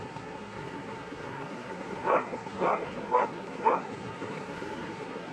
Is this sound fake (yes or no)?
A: yes